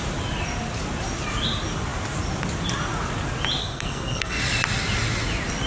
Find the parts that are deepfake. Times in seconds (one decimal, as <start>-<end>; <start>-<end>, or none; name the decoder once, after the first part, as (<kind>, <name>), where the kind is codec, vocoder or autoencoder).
3.6-4.4 (codec, SNAC)